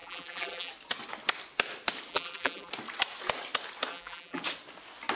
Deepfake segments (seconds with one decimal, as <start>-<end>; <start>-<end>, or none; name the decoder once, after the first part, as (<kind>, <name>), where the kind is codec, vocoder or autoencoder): 0.0-0.7 (vocoder, BigVGAN v2); 2.1-2.7; 3.9-4.4